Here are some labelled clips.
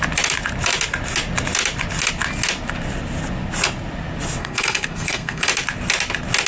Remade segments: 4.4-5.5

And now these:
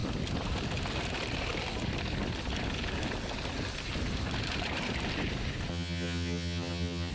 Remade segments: 5.7-7.1

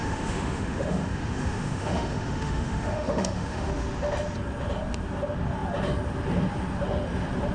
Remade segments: 0.0-3.7

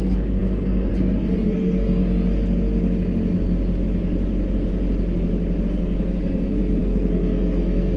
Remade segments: 0.0-2.0; 5.6-8.0